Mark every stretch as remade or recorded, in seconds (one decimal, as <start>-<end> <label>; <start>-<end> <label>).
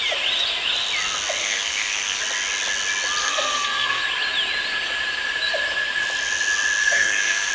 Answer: 0.0-1.4 recorded; 1.4-2.2 remade; 2.2-3.2 recorded; 3.2-4.0 remade; 4.0-6.8 recorded; 6.8-7.5 remade